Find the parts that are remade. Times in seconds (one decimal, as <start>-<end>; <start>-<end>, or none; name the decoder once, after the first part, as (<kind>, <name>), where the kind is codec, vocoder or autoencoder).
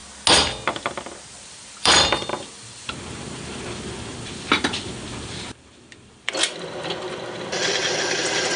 1.3-8.6 (vocoder, BigVGAN v2)